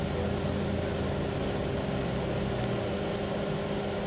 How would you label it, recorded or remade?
recorded